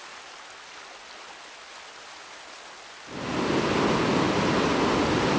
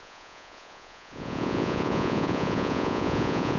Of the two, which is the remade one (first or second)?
second